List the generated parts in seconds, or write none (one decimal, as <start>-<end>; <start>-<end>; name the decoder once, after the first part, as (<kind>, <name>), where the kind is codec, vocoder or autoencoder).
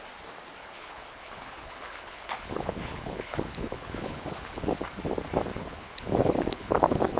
0.6-4.8 (codec, HILCodec); 5.5-7.2